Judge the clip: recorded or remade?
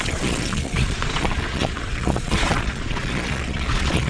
remade